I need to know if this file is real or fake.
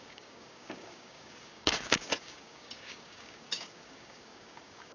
fake